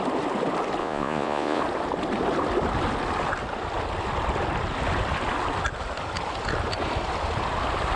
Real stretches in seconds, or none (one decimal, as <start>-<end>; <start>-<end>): 0.0-0.8; 1.6-8.0